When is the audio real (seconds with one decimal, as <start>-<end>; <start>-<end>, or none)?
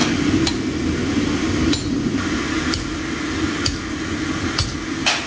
0.0-5.3